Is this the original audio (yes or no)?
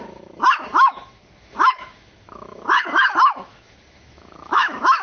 no